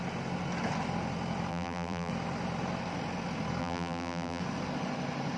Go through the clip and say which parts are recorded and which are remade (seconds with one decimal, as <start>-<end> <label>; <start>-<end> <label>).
0.0-1.5 recorded; 1.5-2.1 remade; 2.1-3.6 recorded; 3.6-4.4 remade; 4.4-5.4 recorded